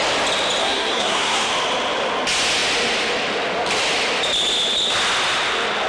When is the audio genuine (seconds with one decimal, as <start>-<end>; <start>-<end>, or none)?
0.0-0.6; 1.5-5.9